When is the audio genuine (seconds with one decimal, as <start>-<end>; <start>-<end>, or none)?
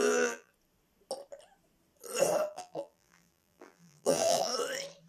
0.5-2.5; 4.5-5.1